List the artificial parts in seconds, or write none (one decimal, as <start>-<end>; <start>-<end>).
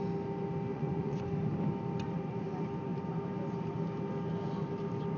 0.7-1.2